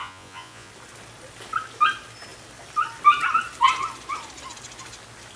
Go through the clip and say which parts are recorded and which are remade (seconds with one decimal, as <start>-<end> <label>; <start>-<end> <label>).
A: 0.0-0.7 remade; 0.7-5.4 recorded